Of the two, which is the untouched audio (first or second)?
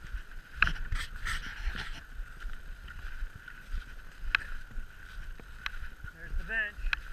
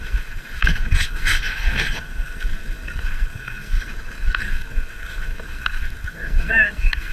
first